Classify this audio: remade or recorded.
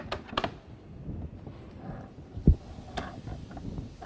recorded